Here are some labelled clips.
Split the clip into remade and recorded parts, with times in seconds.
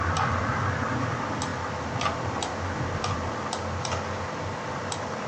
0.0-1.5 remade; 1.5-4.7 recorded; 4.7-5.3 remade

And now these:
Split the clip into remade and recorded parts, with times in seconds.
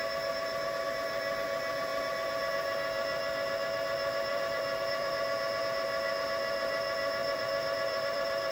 0.0-4.3 recorded; 4.3-5.1 remade; 5.1-7.2 recorded; 7.2-8.5 remade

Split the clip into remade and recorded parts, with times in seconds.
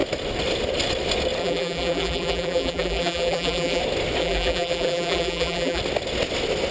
0.0-1.4 recorded; 1.4-3.8 remade; 3.8-4.2 recorded; 4.2-5.8 remade; 5.8-6.7 recorded